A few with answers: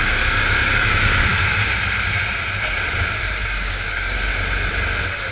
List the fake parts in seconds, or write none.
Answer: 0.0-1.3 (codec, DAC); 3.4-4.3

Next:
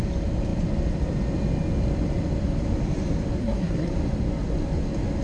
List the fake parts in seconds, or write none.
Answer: 3.4-3.9 (codec, SNAC)

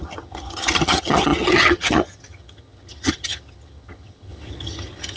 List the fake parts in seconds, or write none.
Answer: 0.0-5.2 (vocoder, HiFi-GAN)

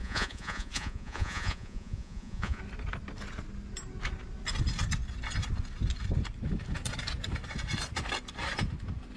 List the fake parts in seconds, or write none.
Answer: 0.0-2.6 (vocoder, Vocos)

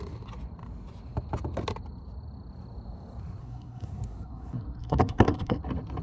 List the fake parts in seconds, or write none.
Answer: 3.4-5.6 (codec, SNAC)

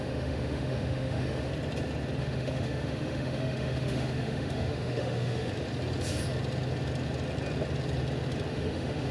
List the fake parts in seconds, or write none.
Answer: 0.0-1.5 (autoencoder, DAC-VAE); 2.2-5.5; 8.5-9.1